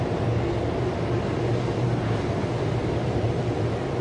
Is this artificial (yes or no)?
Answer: no